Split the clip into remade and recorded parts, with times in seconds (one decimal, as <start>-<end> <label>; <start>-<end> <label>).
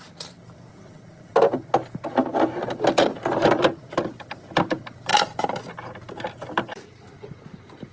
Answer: 0.0-1.3 remade; 1.3-2.9 recorded; 2.9-5.1 remade; 5.1-6.2 recorded; 6.2-7.9 remade